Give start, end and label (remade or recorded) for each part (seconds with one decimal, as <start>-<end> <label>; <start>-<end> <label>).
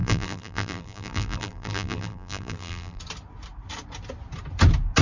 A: 0.0-3.0 remade; 3.0-5.0 recorded